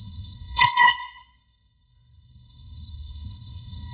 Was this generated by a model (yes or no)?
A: yes